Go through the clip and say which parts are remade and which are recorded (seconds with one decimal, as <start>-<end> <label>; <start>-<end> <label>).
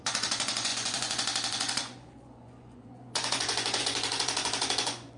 0.0-5.2 remade